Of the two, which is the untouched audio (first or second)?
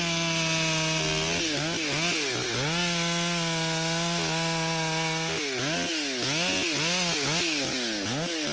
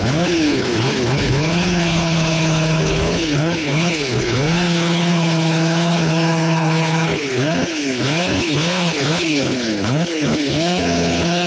first